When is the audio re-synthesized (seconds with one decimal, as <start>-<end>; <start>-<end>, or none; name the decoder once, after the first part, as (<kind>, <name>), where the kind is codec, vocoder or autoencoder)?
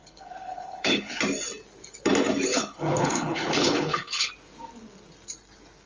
0.0-1.2 (codec, HILCodec); 2.5-4.3